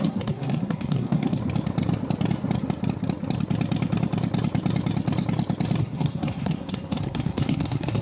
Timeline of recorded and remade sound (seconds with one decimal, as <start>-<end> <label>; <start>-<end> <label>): 0.0-1.4 remade; 1.4-5.8 recorded; 5.8-8.0 remade